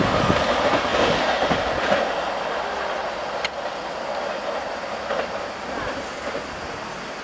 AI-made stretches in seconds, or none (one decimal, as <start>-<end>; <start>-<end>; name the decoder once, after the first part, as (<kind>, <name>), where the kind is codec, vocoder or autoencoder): none